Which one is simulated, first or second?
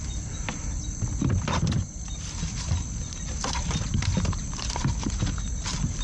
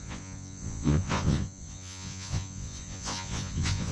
second